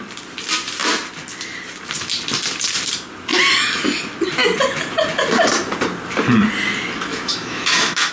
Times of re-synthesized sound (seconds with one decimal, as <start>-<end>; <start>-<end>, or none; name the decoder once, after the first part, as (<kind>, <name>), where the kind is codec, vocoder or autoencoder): 7.1-8.1 (autoencoder, DAC-VAE)